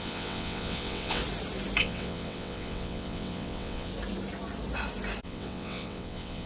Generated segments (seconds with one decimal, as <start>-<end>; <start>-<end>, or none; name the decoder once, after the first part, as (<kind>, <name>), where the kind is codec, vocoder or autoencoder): 0.0-1.2 (vocoder, WaveNeXt); 1.8-3.9; 5.2-6.5